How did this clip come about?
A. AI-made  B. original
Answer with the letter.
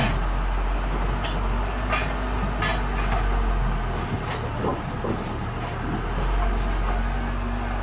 B